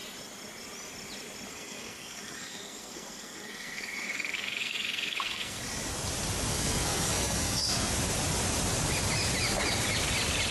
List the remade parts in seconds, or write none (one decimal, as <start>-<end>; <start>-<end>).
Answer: 1.5-5.6; 6.5-7.9